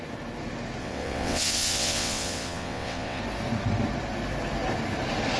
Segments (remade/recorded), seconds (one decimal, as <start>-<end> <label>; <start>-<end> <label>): 0.0-0.8 recorded; 0.8-3.2 remade; 3.2-5.4 recorded

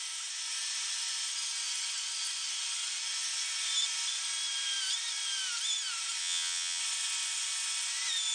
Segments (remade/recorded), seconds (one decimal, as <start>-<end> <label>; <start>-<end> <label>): 0.0-6.2 recorded; 6.2-6.8 remade; 6.8-8.3 recorded

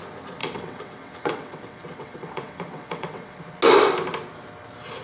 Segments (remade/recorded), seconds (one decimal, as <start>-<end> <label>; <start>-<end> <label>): 0.0-0.4 recorded; 0.4-3.4 remade; 3.4-5.0 recorded

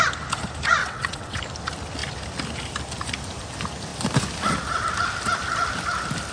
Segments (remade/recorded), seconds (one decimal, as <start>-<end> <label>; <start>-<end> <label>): 0.0-0.8 recorded; 0.8-1.4 remade; 1.4-6.3 recorded

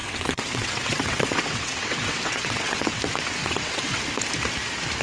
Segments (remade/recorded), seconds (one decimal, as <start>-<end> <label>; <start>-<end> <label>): 0.0-3.0 remade; 3.0-3.4 recorded; 3.4-4.0 remade; 4.0-5.0 recorded

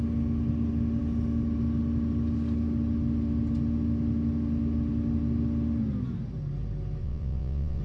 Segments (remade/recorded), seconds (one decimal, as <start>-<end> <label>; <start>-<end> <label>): 0.0-7.0 recorded; 7.0-7.8 remade

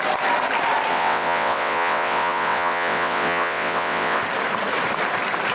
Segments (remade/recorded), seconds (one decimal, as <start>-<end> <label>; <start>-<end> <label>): 0.0-0.9 recorded; 0.9-4.2 remade; 4.2-5.5 recorded

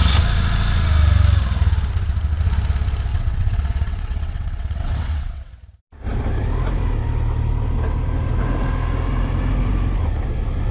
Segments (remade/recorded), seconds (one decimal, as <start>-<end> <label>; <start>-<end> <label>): 0.0-3.1 recorded; 3.1-5.5 remade; 5.5-10.7 recorded